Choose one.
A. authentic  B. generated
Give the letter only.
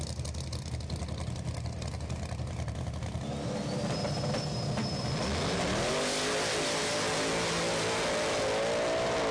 A